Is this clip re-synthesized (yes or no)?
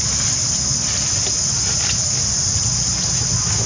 no